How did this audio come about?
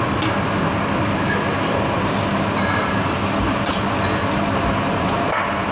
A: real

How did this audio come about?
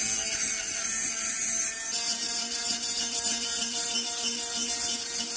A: real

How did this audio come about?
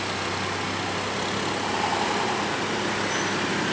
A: real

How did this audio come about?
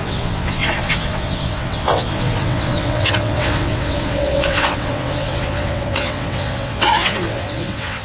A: fake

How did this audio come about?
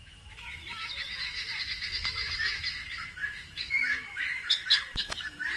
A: fake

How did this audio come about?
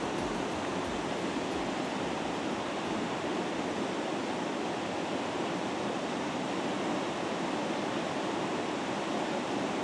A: real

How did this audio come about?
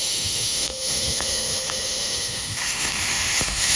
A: fake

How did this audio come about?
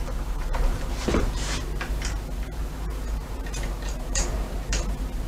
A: fake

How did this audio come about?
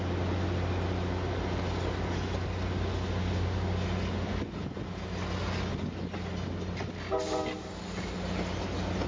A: real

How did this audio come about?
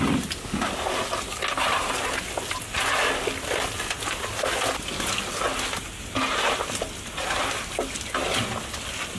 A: real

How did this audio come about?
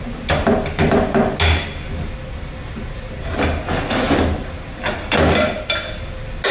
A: real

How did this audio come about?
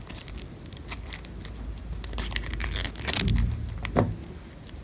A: real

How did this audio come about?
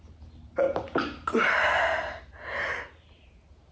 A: real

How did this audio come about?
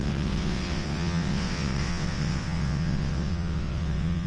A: fake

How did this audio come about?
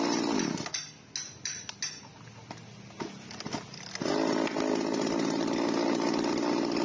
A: real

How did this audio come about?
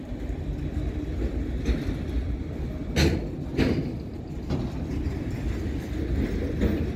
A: real